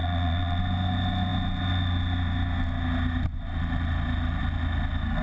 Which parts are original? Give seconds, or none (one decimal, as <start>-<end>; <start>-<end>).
0.6-5.2